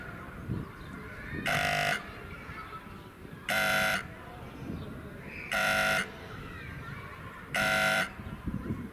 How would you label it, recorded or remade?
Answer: remade